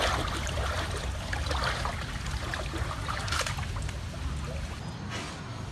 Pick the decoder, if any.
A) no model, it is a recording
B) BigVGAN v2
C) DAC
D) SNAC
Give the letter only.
A